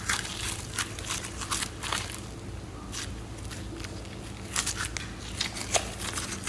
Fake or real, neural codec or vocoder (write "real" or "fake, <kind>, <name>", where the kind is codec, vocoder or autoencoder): real